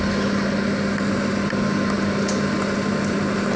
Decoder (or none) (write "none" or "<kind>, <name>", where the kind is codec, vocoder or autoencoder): none